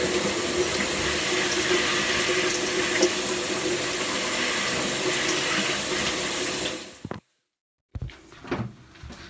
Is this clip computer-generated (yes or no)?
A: no